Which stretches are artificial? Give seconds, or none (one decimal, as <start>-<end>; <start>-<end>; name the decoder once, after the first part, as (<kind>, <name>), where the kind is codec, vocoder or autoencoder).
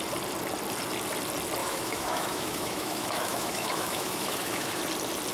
1.6-4.8 (autoencoder, DAC-VAE)